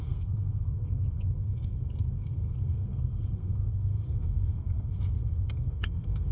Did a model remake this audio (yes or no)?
yes